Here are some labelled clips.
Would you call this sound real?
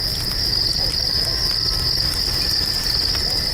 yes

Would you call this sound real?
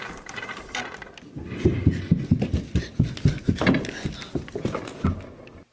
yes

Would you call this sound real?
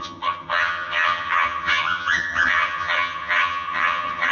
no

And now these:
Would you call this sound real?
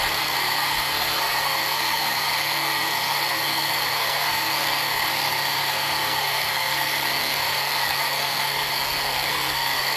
no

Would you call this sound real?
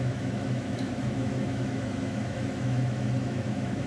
no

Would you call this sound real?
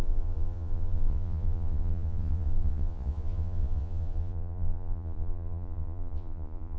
no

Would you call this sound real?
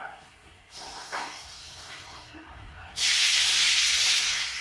no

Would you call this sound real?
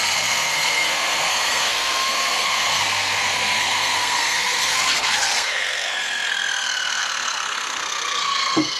no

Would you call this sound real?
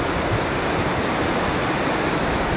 yes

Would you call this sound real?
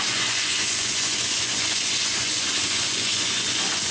no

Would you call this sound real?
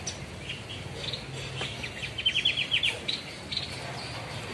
yes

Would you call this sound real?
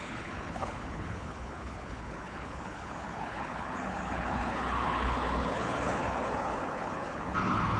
no